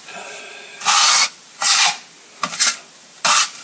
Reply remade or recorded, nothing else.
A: recorded